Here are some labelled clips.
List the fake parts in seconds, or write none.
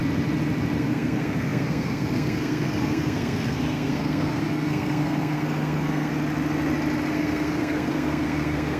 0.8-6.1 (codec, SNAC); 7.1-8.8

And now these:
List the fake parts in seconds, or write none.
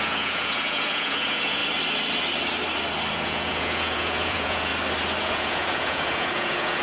0.0-1.6 (vocoder, Vocos); 3.1-4.7; 5.2-6.8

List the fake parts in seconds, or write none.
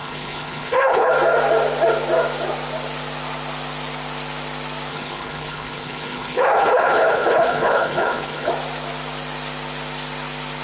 0.0-1.1 (codec, HILCodec); 4.9-8.5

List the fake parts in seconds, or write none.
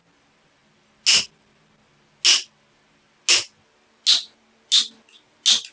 none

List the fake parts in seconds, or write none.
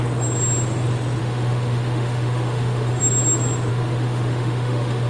1.2-3.0 (autoencoder, DAC-VAE); 3.7-5.1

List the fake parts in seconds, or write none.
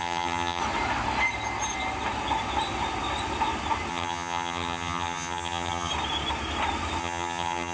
0.0-0.6 (vocoder, HiFi-GAN); 3.9-5.9; 7.0-7.7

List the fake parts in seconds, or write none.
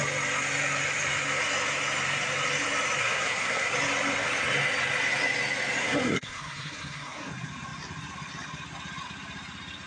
3.0-3.7 (codec, SNAC); 5.8-7.3